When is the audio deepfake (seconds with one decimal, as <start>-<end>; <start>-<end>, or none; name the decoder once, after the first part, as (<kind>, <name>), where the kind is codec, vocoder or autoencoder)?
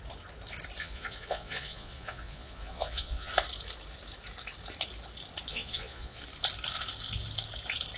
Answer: 0.8-3.3 (vocoder, Vocos); 5.5-6.2